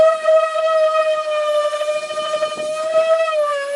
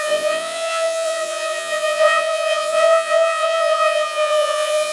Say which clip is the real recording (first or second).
first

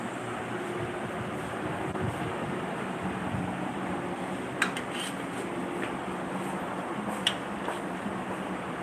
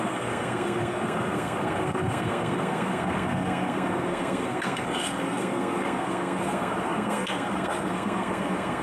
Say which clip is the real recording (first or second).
first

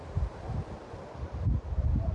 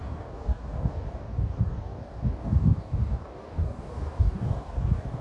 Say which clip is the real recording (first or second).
first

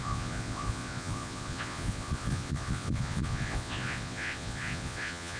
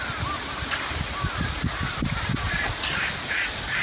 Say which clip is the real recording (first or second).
second